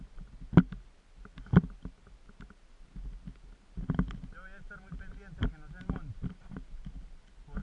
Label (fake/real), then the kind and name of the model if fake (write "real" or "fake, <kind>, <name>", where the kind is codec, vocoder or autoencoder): real